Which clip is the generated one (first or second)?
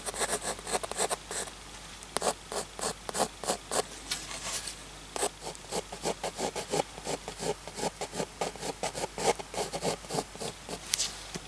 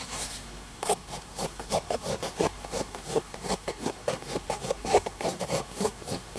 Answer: second